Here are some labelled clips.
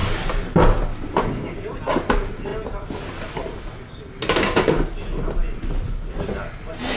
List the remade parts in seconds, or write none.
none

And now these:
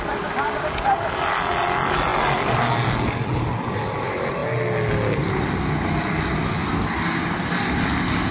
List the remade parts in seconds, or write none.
none

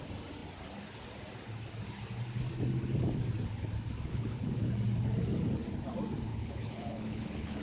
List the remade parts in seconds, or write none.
4.1-4.7 (codec, HILCodec); 6.3-7.6

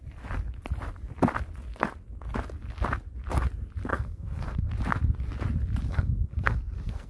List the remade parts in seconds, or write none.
3.9-4.7 (codec, SNAC); 5.9-7.1